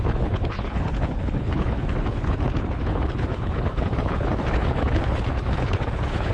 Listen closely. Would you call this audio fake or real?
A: fake